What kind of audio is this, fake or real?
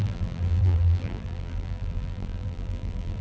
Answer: fake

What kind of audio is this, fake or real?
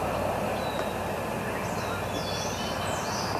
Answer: fake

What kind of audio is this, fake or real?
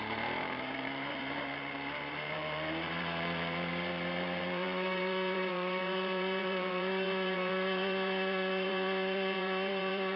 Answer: fake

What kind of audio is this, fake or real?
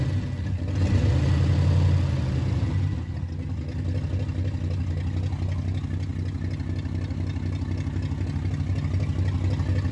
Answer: real